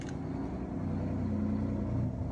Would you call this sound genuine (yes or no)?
yes